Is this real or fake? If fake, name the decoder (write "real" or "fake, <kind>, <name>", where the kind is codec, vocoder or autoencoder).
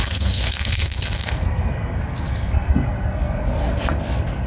fake, codec, SNAC